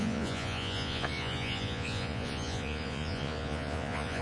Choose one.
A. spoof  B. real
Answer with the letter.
A